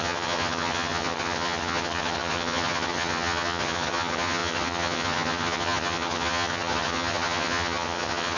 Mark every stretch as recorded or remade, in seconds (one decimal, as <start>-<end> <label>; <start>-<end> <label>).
0.0-8.4 remade